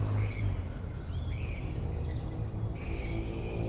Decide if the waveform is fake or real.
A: real